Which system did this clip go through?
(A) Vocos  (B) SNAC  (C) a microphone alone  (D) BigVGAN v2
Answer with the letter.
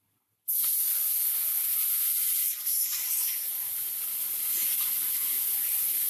D